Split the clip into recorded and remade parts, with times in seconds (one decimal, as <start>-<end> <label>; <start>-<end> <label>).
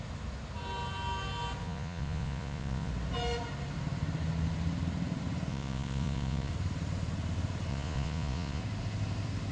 0.0-1.6 recorded; 1.6-2.9 remade; 2.9-5.5 recorded; 5.5-6.5 remade; 6.5-7.7 recorded; 7.7-8.6 remade; 8.6-9.5 recorded